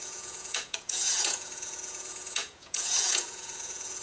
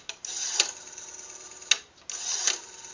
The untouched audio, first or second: second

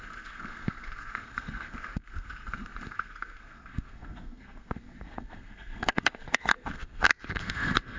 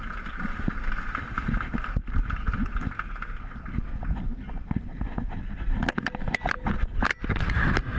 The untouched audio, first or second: second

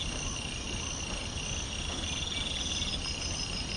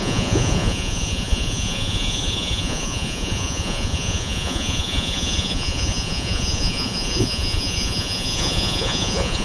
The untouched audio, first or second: first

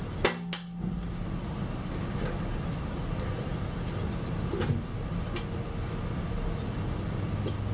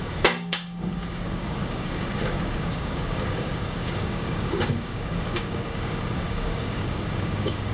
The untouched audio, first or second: first